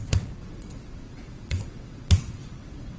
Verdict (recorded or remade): remade